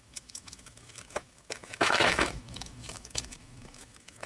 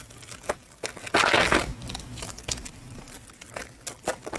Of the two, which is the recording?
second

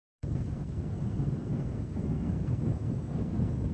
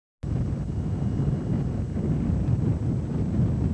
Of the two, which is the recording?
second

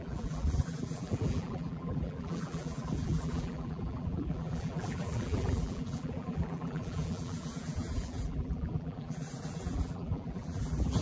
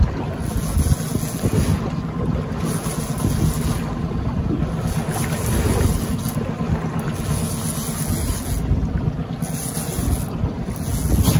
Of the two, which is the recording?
second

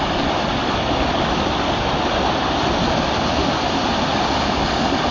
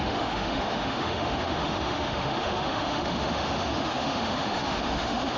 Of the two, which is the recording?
first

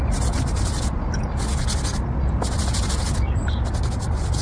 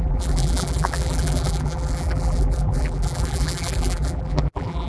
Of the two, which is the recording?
first